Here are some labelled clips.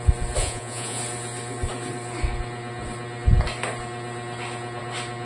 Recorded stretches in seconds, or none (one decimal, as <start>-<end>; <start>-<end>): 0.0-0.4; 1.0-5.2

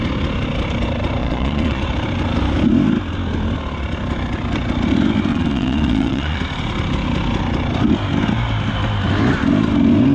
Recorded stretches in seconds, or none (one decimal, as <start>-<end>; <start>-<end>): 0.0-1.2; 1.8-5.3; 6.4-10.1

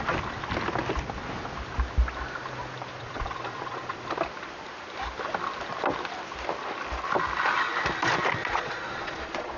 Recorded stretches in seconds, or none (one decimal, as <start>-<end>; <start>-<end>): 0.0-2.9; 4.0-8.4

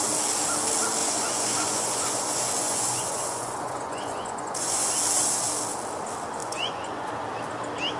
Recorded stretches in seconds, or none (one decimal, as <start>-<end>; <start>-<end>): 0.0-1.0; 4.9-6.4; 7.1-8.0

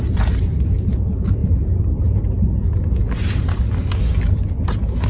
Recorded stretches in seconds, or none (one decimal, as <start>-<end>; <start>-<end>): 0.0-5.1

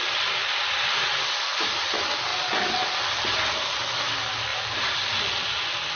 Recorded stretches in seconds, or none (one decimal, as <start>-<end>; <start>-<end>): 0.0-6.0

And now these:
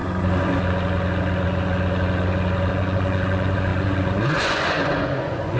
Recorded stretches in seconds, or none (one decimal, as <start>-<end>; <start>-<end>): 0.0-2.7